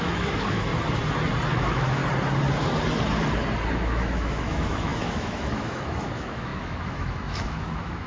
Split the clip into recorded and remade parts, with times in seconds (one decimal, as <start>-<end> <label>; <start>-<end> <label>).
0.0-0.7 remade; 0.7-1.5 recorded; 1.5-2.0 remade; 2.0-3.7 recorded; 3.7-8.1 remade